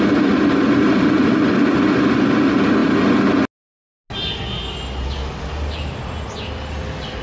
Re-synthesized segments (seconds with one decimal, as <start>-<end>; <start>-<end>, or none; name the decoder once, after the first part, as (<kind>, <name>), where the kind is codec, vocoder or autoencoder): none